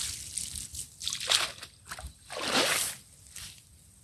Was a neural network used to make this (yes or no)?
no